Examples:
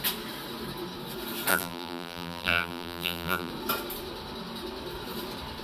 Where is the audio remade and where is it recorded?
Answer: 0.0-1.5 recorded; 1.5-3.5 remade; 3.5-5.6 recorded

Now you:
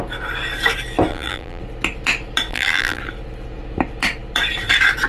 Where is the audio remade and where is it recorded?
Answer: 0.0-1.1 recorded; 1.1-1.6 remade; 1.6-2.5 recorded; 2.5-3.0 remade; 3.0-5.1 recorded